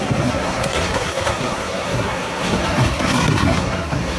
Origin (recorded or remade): remade